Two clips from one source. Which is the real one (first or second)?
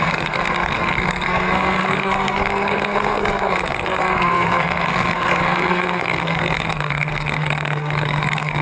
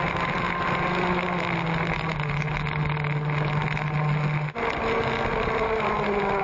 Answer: second